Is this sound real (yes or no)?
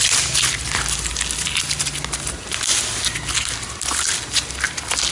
yes